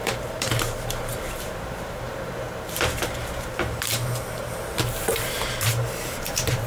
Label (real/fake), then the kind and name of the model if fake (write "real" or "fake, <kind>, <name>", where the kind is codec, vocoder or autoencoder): fake, vocoder, BigVGAN v2